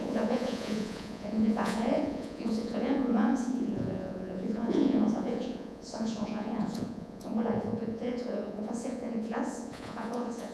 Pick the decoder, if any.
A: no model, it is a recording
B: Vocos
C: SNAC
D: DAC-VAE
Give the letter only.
B